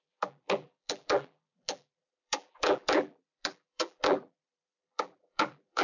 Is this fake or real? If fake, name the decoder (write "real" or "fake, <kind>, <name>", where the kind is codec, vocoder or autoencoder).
fake, vocoder, BigVGAN v2